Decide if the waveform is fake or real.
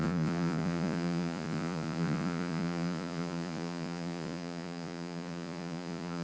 fake